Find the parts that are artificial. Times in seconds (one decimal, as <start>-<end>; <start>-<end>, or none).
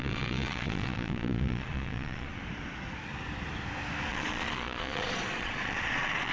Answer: 0.0-2.4; 4.1-6.3